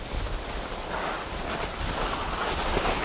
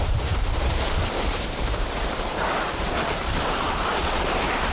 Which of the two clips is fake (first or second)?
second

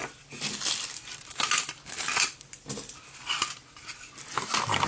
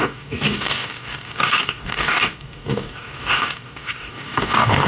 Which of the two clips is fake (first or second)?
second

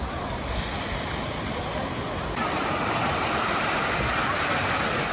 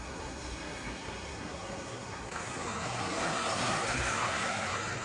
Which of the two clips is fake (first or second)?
second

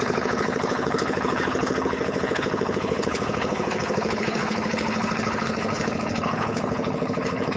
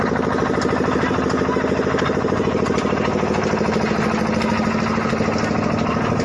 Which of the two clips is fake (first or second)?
first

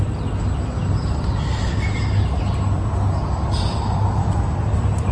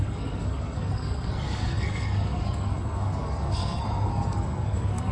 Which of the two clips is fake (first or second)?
second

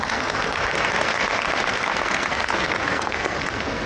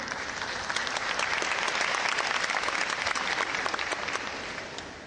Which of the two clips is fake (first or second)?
first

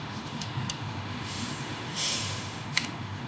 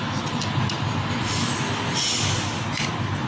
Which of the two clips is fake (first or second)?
first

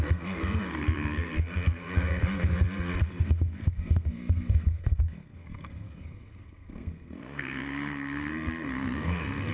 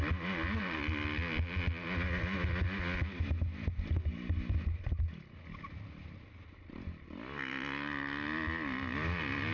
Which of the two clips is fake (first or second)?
first